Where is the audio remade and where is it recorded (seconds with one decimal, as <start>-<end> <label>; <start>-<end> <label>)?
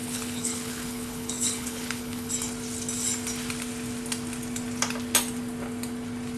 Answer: 0.0-2.3 remade; 2.3-6.4 recorded